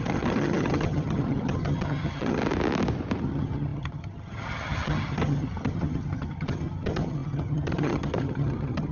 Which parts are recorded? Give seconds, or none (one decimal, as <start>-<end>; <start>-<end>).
2.4-3.2